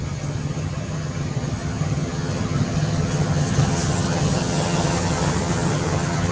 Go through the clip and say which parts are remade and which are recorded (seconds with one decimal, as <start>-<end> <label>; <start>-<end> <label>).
0.0-6.3 remade

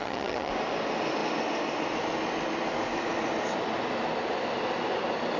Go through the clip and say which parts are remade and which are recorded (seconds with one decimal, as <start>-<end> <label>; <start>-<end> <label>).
0.0-0.5 remade; 0.5-5.4 recorded

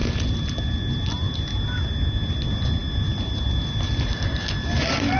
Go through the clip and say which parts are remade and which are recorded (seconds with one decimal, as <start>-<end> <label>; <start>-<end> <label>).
0.0-5.2 recorded

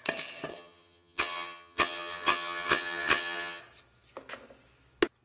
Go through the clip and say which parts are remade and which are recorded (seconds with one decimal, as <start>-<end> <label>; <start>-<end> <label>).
0.0-0.5 recorded; 0.5-3.6 remade; 3.6-5.2 recorded

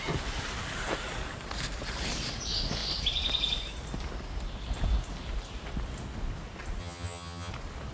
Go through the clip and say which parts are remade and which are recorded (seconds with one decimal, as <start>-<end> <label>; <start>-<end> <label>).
0.0-6.8 recorded; 6.8-7.5 remade; 7.5-7.9 recorded